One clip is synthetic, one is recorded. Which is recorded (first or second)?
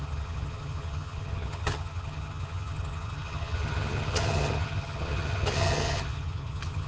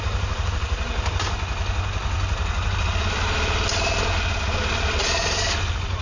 second